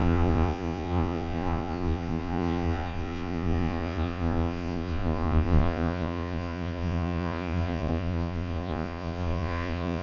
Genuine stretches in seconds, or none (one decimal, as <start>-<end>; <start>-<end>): none